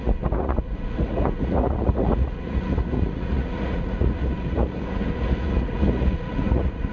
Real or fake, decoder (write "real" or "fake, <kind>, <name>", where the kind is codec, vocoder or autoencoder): fake, vocoder, Vocos